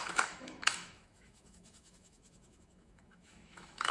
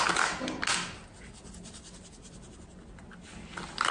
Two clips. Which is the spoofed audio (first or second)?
first